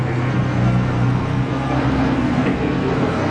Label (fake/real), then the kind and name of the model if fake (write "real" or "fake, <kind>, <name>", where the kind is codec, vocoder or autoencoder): fake, codec, SNAC